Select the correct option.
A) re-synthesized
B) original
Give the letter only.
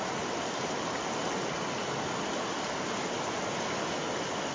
B